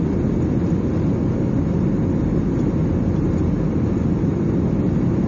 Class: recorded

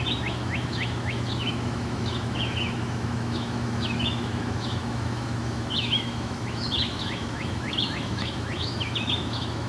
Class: remade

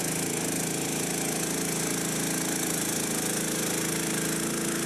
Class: recorded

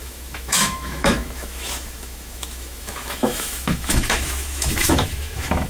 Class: remade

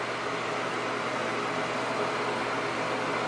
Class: recorded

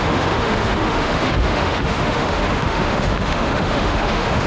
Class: remade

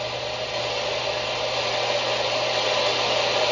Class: recorded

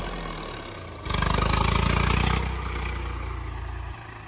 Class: recorded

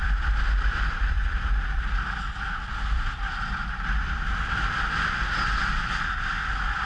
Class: recorded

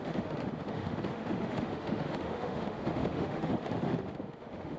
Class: remade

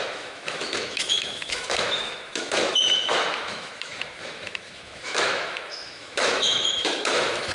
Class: remade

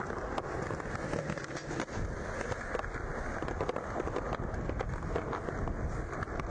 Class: recorded